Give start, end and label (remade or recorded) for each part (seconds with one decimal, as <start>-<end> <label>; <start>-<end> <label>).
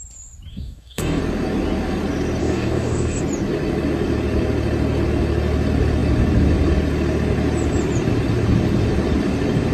0.0-0.5 recorded; 0.5-1.2 remade; 1.2-2.4 recorded; 2.4-3.2 remade; 3.2-9.7 recorded